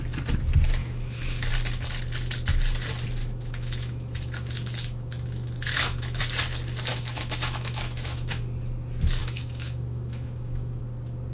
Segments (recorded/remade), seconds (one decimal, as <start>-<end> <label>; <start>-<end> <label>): 0.0-0.8 recorded; 0.8-1.5 remade; 1.5-3.2 recorded; 3.2-6.2 remade; 6.2-6.9 recorded; 6.9-8.4 remade; 8.4-9.2 recorded; 9.2-10.8 remade; 10.8-11.3 recorded